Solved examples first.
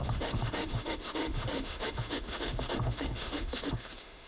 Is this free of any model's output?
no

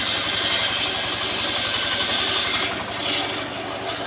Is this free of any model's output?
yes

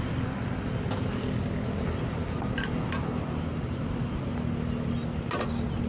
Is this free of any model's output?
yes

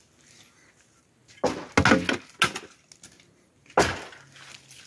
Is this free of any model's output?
yes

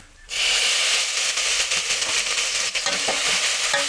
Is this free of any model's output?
yes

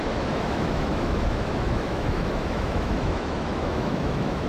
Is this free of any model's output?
no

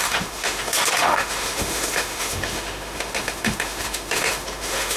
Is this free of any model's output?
no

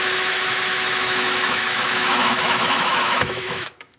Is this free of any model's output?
no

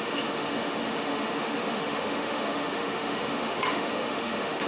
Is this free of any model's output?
no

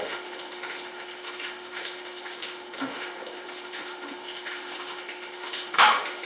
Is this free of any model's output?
no